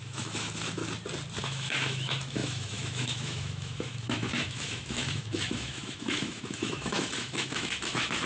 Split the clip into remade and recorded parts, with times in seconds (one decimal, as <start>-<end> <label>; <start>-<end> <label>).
0.0-0.8 remade; 0.8-1.4 recorded; 1.4-8.3 remade